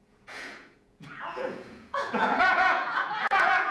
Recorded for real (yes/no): no